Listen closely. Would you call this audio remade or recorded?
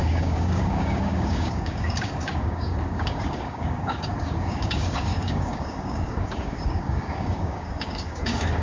remade